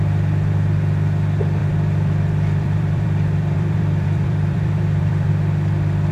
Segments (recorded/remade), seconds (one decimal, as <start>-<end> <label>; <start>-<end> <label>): 0.0-1.6 recorded; 1.6-5.3 remade; 5.3-6.1 recorded